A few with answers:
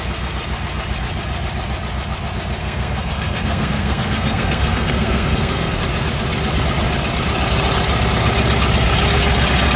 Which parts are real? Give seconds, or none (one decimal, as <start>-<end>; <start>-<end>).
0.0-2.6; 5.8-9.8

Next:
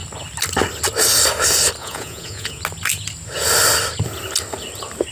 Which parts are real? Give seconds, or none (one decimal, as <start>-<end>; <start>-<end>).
0.0-1.8; 2.6-5.1

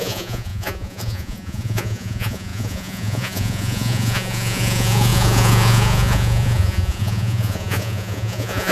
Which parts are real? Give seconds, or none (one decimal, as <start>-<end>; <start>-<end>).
none